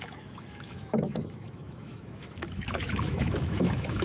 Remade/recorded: remade